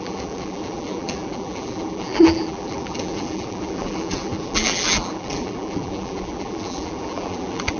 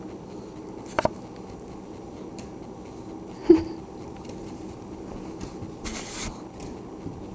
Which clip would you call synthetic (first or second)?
first